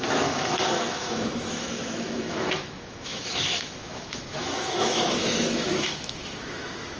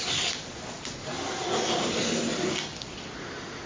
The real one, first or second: second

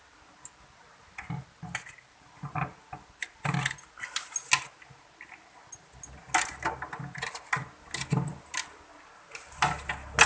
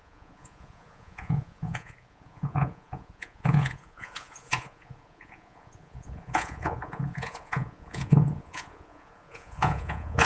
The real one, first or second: first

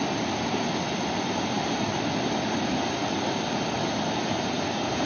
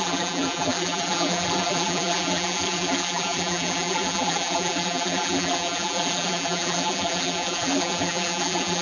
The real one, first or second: first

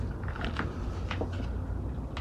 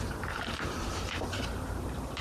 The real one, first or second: first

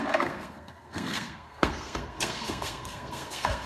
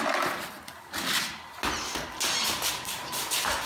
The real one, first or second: second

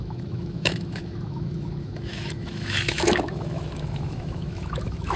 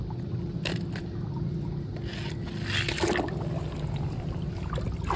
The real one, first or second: second